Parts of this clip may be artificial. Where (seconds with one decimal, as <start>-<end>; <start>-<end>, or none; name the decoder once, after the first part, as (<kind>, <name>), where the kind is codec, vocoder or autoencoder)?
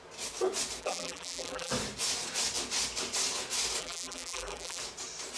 0.8-1.7 (vocoder, BigVGAN v2); 3.8-4.8